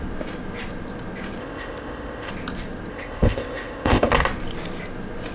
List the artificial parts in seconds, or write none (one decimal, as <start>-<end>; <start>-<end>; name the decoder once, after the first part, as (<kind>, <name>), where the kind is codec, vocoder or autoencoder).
1.4-2.3 (codec, ZipCodec); 2.9-4.1